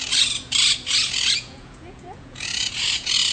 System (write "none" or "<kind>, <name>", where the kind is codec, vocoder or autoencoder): vocoder, Vocos